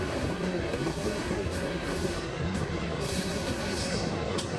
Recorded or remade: remade